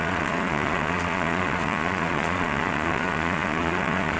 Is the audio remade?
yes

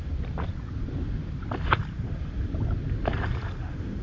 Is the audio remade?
no